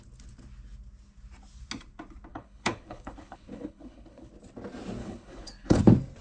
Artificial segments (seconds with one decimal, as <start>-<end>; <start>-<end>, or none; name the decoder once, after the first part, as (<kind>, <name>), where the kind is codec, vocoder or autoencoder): 2.3-4.3 (codec, HILCodec); 5.0-5.8